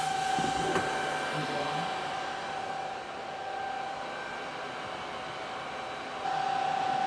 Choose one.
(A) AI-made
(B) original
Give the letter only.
B